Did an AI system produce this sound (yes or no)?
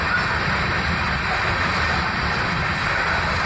no